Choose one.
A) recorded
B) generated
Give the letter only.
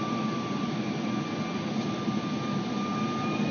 B